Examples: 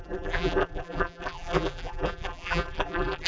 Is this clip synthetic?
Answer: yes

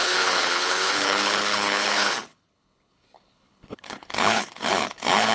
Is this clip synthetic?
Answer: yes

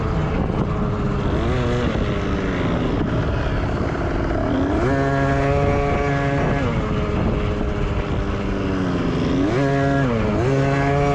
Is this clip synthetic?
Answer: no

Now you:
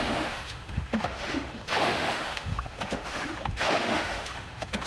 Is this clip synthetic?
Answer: yes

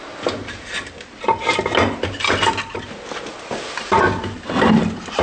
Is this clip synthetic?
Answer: no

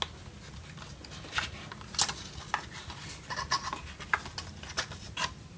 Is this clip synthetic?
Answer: no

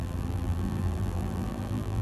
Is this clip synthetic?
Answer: yes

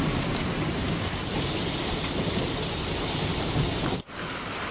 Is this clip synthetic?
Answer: yes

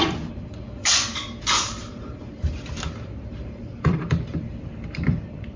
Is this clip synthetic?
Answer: yes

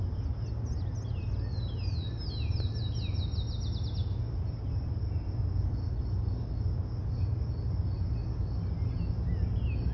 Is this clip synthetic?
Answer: no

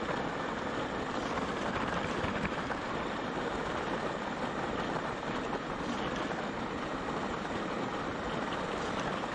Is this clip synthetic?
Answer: no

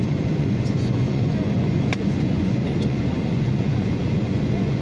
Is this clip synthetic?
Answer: yes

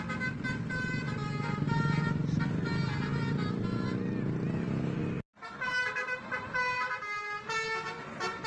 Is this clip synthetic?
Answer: no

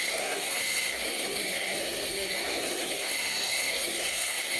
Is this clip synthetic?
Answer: yes